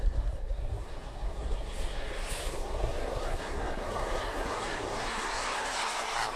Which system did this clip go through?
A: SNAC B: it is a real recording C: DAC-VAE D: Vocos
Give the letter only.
A